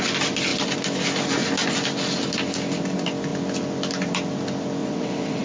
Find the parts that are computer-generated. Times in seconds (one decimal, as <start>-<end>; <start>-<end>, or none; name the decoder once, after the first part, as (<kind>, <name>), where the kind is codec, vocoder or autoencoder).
4.8-5.4 (vocoder, WaveNeXt)